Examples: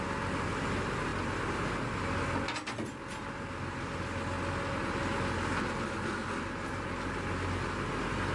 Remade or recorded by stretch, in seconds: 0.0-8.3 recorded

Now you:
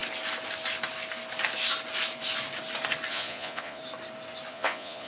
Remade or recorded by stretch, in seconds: 0.0-3.1 recorded; 3.1-3.8 remade; 3.8-4.5 recorded; 4.5-5.1 remade

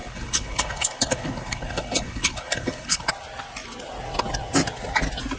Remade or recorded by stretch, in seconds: 0.0-3.1 remade; 3.1-5.4 recorded

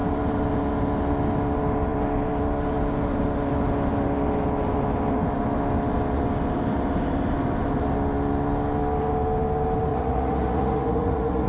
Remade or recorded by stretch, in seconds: 0.0-9.9 recorded; 9.9-11.5 remade